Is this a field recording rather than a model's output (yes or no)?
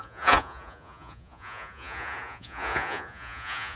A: no